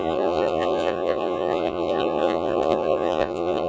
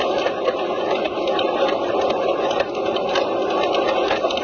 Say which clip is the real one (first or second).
second